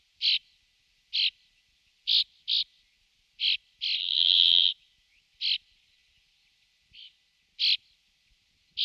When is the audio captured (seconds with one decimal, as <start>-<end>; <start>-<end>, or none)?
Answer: 0.0-4.0; 4.7-8.8